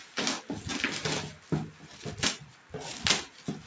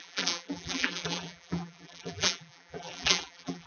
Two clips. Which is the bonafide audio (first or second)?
first